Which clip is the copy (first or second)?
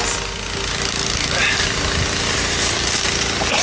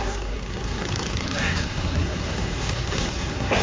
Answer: second